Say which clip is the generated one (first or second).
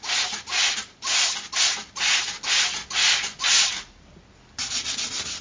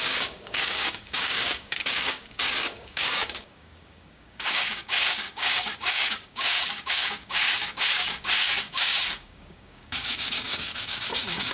second